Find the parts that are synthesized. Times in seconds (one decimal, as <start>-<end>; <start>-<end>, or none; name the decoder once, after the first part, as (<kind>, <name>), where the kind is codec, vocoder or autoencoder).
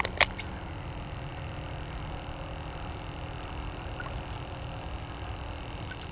none